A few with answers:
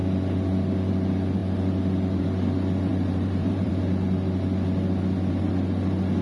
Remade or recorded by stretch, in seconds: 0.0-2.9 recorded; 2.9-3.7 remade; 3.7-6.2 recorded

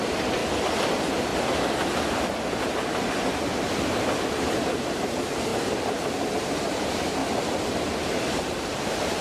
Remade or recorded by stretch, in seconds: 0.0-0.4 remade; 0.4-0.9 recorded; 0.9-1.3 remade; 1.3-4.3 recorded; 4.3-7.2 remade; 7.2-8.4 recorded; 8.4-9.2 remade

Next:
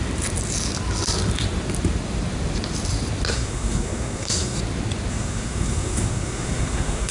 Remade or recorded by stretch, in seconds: 0.0-3.3 recorded; 3.3-4.6 remade; 4.6-5.1 recorded; 5.1-7.1 remade